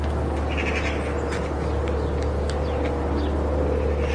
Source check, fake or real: real